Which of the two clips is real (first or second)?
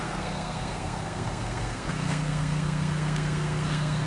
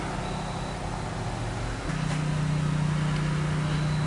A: second